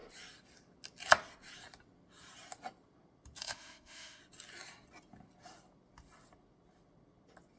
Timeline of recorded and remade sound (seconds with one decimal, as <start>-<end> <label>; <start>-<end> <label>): 0.0-3.4 recorded; 3.4-4.2 remade; 4.2-7.6 recorded